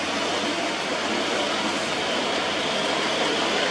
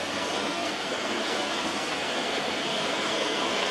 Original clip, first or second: first